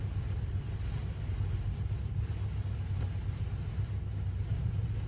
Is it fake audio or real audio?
real